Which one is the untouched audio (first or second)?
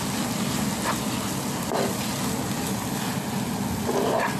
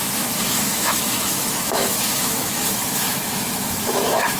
first